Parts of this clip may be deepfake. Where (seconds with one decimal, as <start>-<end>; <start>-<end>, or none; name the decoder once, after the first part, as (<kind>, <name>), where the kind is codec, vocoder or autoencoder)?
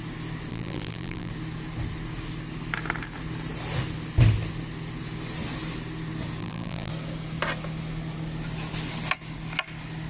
0.5-1.3 (vocoder, BigVGAN v2); 6.4-6.9